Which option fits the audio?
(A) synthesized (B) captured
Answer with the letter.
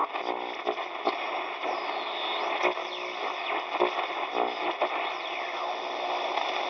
B